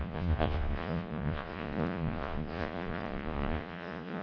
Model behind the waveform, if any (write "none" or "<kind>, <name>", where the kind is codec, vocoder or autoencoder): vocoder, Vocos